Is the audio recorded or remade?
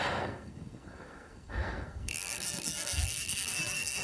remade